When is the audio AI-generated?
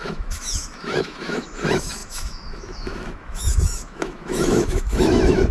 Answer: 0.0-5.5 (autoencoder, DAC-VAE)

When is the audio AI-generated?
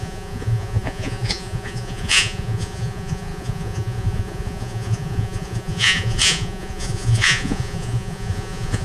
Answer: 0.0-8.8 (vocoder, Vocos)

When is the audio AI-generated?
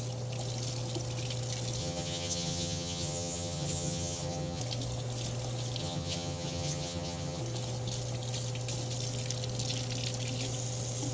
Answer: 1.8-4.6 (vocoder, HiFi-GAN); 5.8-7.4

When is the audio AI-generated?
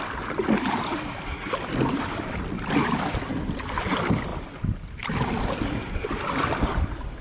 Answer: 1.3-2.2 (vocoder, BigVGAN v2)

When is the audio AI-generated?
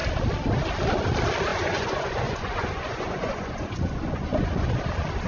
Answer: 1.5-4.7 (vocoder, Vocos)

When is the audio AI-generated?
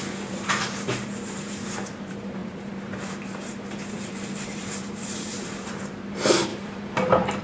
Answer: 0.0-7.4 (vocoder, BigVGAN v2)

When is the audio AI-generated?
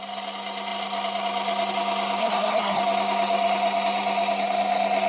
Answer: 2.2-2.8 (codec, SNAC)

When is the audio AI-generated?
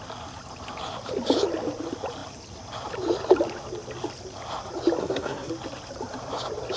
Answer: 5.0-5.5 (codec, SNAC)